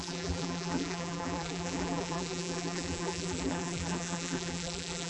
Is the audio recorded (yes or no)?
no